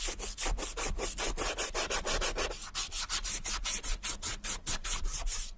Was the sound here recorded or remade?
recorded